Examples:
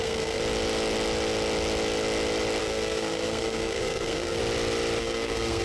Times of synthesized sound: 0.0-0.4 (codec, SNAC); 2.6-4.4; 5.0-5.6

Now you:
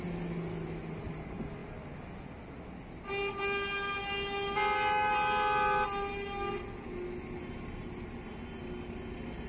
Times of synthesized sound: none

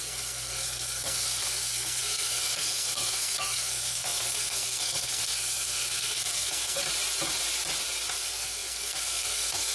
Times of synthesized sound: 0.0-6.8 (codec, SNAC); 8.1-9.7

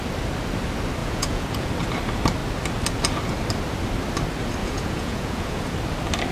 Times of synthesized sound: 1.0-1.7 (vocoder, Vocos); 4.6-5.7